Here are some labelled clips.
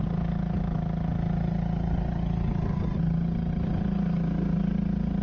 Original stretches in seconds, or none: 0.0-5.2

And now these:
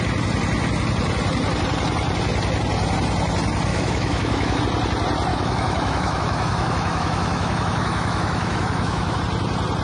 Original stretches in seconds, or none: 0.0-3.7; 4.6-5.3; 9.2-9.8